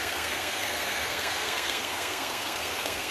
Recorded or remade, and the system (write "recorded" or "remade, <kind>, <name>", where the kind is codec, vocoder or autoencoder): remade, codec, SNAC